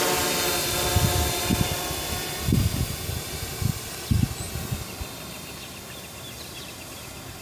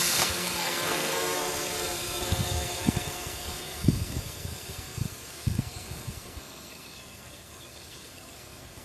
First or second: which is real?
first